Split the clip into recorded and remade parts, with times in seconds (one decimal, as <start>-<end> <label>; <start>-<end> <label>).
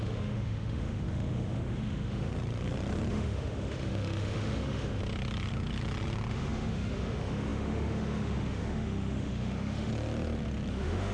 0.0-2.3 remade; 2.3-3.1 recorded; 3.1-5.0 remade; 5.0-6.3 recorded; 6.3-9.9 remade; 9.9-10.7 recorded; 10.7-11.1 remade